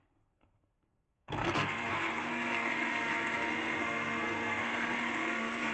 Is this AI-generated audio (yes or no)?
yes